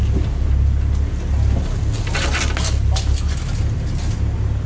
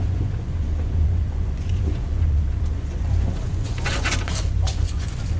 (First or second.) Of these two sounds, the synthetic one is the second